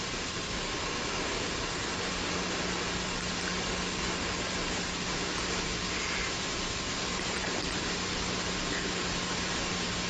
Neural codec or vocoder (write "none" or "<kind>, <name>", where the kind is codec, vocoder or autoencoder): none